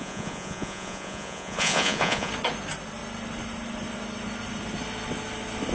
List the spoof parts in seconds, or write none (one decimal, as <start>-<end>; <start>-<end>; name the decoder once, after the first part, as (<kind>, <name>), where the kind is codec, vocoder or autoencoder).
0.0-2.3 (vocoder, Vocos)